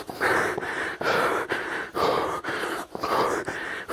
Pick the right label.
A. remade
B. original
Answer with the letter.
A